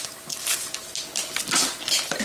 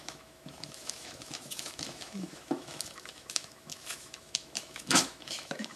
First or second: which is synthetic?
second